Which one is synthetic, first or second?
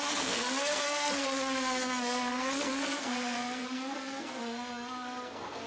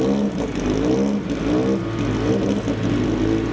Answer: first